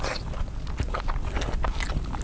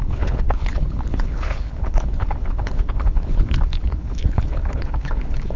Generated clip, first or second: second